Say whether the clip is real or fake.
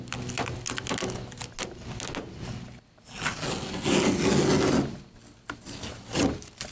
real